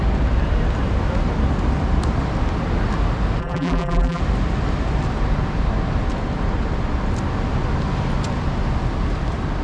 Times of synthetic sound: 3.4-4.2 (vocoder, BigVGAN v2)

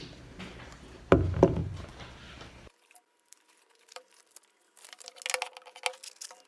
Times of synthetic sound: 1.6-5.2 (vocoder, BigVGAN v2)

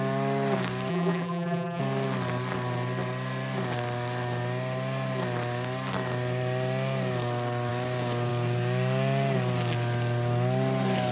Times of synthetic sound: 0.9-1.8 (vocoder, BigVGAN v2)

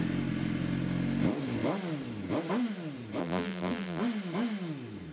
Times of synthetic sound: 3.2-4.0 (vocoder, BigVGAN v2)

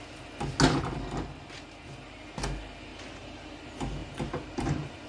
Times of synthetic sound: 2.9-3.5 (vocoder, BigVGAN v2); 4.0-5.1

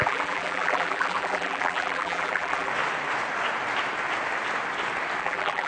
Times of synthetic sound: 0.0-2.7 (vocoder, BigVGAN v2); 5.2-5.7

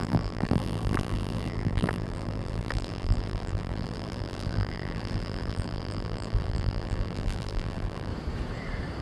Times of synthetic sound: 0.0-8.1 (vocoder, BigVGAN v2)